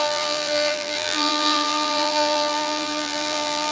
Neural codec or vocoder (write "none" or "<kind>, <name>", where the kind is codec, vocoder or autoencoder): vocoder, BigVGAN v2